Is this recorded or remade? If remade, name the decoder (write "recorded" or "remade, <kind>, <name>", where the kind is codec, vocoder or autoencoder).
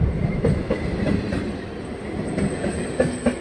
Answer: recorded